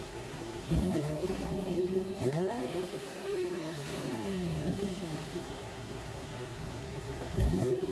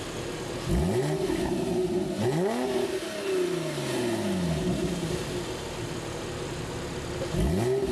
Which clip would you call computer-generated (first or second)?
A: first